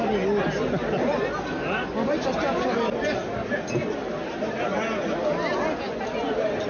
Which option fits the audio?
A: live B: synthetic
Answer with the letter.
A